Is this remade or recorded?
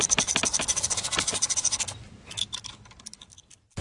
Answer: recorded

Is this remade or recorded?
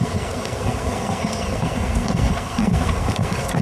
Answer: remade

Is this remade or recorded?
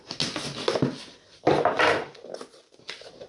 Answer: recorded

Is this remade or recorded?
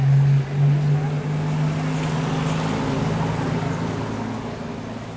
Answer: recorded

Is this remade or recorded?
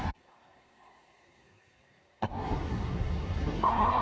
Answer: remade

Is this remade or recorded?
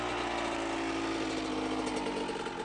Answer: recorded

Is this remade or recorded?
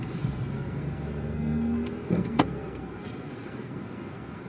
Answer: remade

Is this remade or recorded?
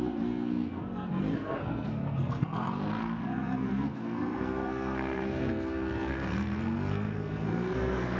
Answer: remade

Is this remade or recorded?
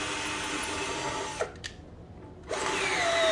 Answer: recorded